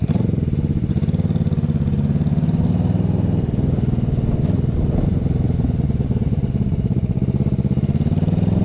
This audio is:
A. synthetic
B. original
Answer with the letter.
B